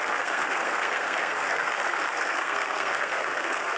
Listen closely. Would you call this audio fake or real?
fake